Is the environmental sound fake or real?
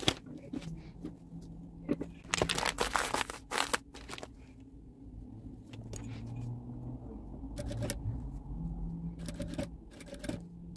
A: real